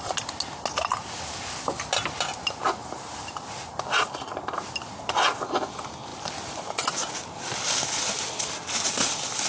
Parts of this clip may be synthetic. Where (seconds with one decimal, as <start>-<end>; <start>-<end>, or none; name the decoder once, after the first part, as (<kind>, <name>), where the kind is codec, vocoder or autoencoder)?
2.8-5.2 (vocoder, BigVGAN v2); 6.1-6.9